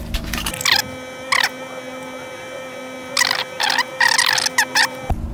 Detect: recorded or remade recorded